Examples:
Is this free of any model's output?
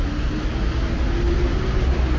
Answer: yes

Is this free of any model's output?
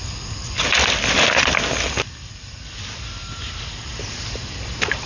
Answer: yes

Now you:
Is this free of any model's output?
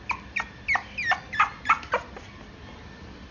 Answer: yes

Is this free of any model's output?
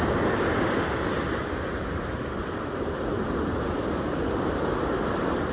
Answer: yes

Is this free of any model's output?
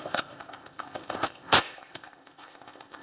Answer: no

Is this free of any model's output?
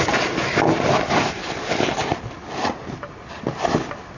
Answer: yes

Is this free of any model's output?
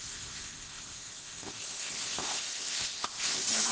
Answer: no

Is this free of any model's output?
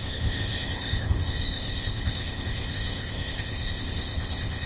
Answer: no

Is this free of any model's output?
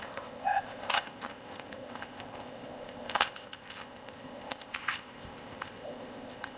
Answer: no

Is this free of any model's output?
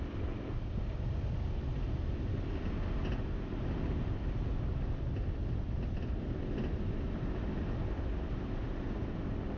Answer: yes